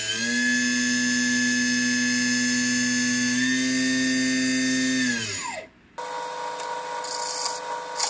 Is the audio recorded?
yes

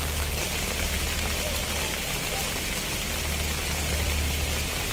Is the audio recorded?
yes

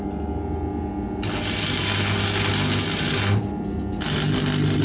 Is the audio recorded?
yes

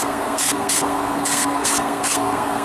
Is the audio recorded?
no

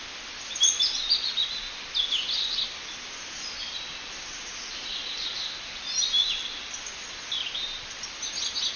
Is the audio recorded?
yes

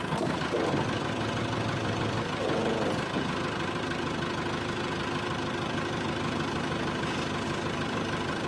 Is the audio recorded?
no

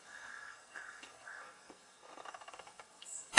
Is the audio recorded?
no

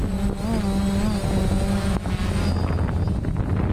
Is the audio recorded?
yes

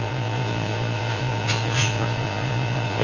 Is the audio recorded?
no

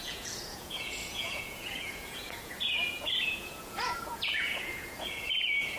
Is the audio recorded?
no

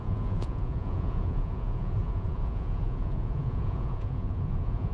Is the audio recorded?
no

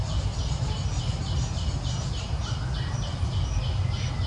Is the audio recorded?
yes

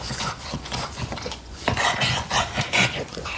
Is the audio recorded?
no